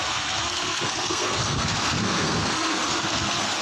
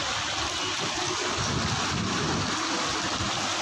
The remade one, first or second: first